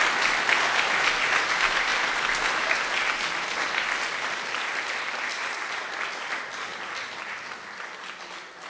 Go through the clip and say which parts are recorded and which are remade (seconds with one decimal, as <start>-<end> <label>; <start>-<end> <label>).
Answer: 0.0-8.7 recorded